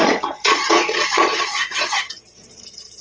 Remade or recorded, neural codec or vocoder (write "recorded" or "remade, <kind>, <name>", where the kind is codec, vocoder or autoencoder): remade, vocoder, Vocos